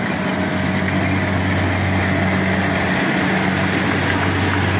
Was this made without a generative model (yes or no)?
yes